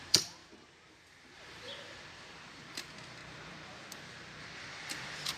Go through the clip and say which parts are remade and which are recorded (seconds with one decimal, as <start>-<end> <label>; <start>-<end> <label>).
0.0-0.4 remade; 0.4-2.5 recorded; 2.5-3.2 remade; 3.2-4.4 recorded; 4.4-5.4 remade